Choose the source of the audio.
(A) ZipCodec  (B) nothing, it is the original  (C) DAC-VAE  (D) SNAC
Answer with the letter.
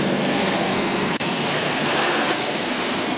D